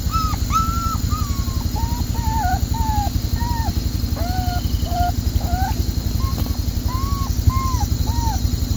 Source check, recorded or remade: recorded